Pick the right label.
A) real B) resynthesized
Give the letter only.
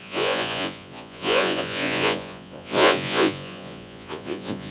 B